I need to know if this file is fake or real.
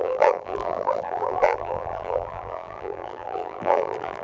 fake